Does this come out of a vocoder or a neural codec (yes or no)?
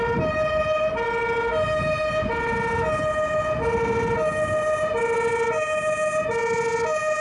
no